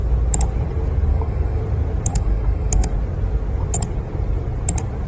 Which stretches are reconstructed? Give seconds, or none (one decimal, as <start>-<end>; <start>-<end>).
1.1-1.6; 2.1-2.9